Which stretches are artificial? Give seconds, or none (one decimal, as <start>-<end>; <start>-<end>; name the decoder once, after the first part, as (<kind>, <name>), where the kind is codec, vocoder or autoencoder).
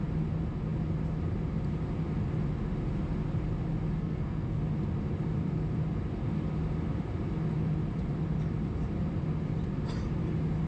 4.0-4.6 (codec, SNAC)